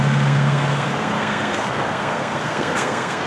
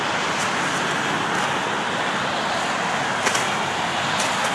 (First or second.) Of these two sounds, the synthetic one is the first